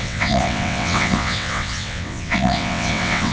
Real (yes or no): no